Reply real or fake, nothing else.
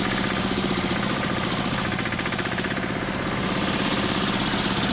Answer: real